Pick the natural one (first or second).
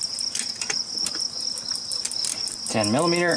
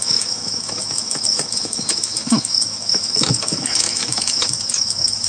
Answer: first